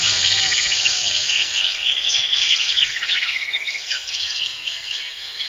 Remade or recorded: remade